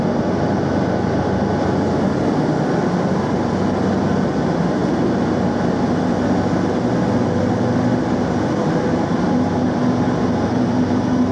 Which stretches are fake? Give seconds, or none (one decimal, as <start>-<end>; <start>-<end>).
none